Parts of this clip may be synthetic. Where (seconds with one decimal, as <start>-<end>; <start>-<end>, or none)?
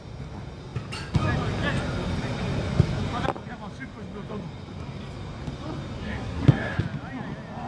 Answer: 6.0-6.8